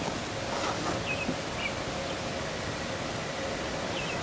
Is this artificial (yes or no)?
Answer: no